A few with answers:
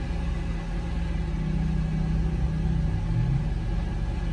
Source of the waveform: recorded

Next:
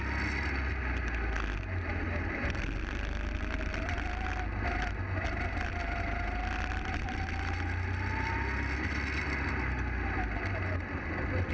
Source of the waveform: recorded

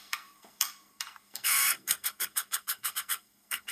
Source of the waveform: remade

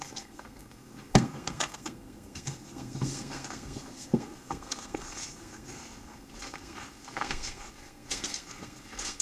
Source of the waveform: remade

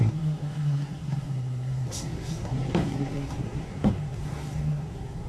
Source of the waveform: remade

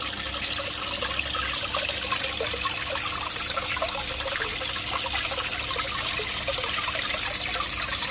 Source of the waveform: recorded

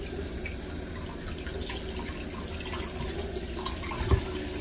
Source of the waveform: recorded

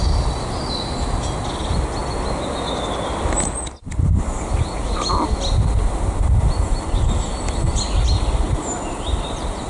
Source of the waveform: recorded